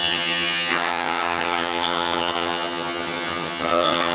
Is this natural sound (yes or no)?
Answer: no